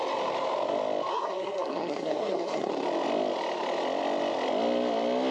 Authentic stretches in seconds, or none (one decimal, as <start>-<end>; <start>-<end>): 0.0-1.1; 2.7-5.3